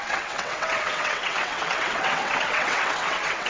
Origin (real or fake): fake